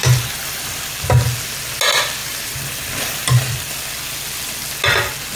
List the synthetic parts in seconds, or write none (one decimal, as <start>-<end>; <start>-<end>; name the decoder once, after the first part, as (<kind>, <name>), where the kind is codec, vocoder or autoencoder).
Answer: 0.0-0.8 (vocoder, BigVGAN v2); 2.2-3.7